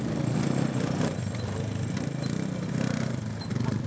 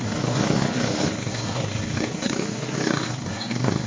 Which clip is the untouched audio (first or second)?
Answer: first